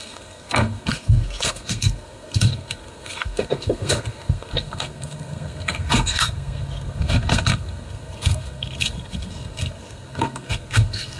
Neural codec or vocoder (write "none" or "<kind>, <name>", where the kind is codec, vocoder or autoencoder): codec, SNAC